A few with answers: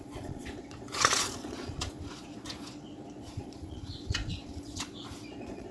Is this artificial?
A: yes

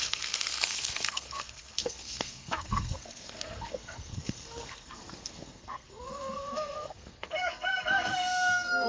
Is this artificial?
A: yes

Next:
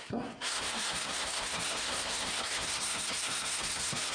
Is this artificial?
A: yes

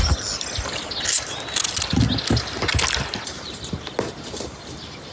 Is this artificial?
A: no